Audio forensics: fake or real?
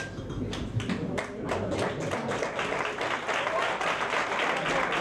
real